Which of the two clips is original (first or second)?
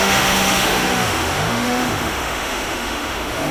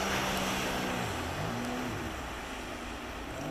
second